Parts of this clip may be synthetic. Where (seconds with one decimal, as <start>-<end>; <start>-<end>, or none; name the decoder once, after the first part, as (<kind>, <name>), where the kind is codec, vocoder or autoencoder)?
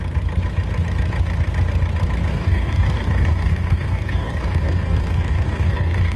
2.3-6.2 (codec, DAC)